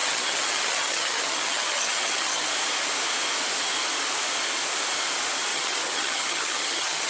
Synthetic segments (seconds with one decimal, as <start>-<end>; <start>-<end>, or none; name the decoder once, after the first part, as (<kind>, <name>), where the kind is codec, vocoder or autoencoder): 0.0-2.5 (vocoder, HiFi-GAN); 5.5-7.1